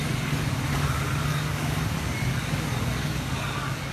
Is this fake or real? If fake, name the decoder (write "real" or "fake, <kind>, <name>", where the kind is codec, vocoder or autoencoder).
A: fake, codec, DAC